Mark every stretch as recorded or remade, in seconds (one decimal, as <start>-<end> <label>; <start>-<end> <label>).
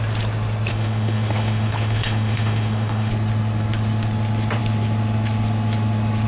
0.0-0.7 recorded; 0.7-3.1 remade; 3.1-6.3 recorded